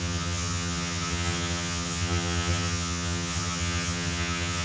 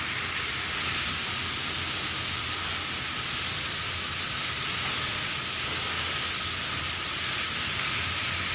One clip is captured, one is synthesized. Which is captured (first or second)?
second